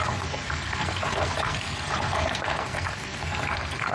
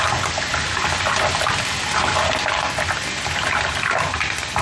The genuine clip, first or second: second